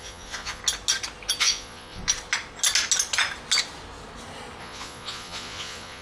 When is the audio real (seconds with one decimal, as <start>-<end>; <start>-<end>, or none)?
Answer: 0.6-1.4; 2.0-4.6